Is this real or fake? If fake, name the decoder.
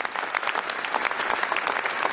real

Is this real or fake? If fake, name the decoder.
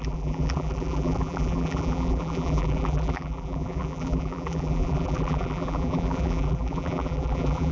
fake, vocoder, BigVGAN v2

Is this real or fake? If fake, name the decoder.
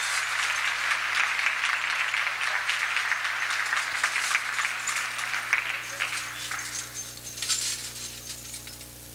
real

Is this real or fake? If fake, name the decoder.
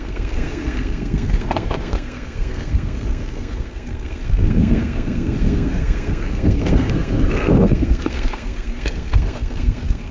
fake, codec, SNAC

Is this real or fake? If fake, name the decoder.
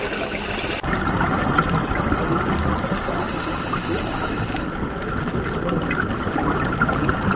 real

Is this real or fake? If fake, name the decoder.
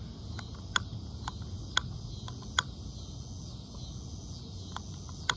real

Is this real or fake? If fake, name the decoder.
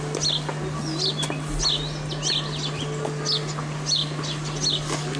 real